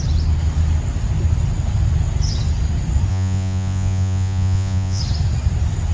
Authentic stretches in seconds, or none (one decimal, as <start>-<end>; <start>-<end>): 0.0-3.1; 5.0-5.9